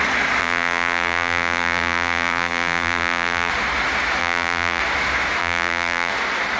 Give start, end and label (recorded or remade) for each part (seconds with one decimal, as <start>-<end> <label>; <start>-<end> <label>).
0.0-0.4 recorded; 0.4-3.5 remade; 3.5-4.2 recorded; 4.2-4.8 remade; 4.8-5.4 recorded; 5.4-6.1 remade; 6.1-6.6 recorded